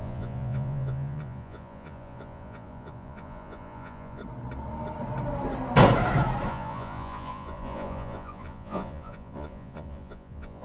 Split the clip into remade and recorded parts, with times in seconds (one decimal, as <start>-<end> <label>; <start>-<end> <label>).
0.0-4.2 remade; 4.2-6.5 recorded; 6.5-10.6 remade